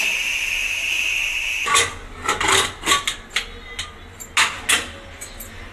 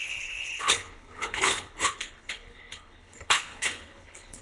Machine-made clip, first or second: second